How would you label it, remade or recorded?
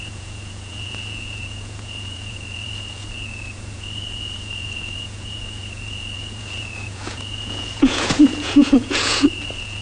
remade